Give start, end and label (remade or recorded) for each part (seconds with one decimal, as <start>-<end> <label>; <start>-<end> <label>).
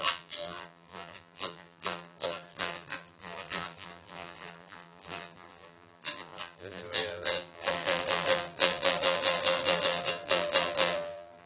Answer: 0.0-11.5 remade